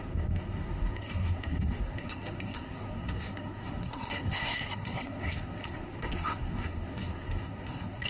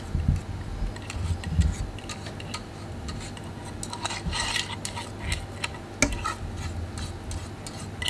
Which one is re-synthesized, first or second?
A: first